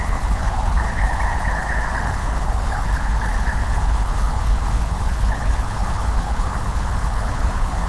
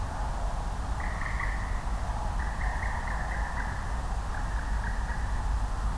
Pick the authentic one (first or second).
second